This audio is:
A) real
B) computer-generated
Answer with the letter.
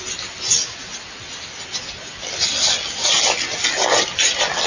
A